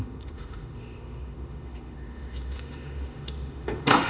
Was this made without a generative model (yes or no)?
no